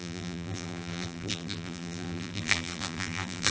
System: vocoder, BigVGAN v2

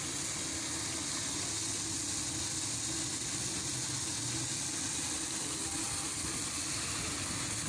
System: none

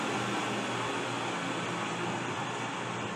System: none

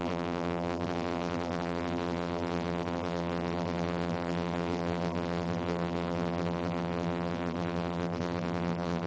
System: vocoder, BigVGAN v2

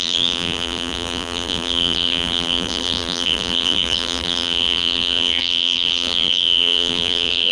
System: vocoder, BigVGAN v2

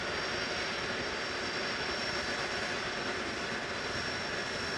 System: none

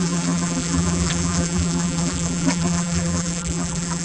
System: vocoder, BigVGAN v2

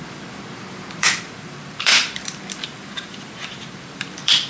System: vocoder, BigVGAN v2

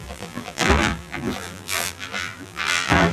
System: vocoder, BigVGAN v2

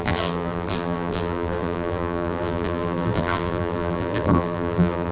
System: vocoder, BigVGAN v2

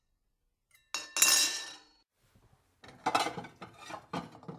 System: none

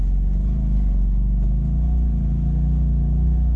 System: none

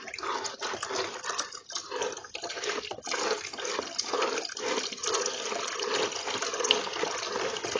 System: none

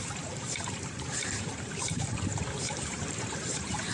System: vocoder, BigVGAN v2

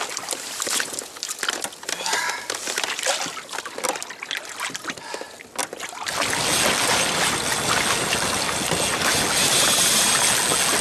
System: none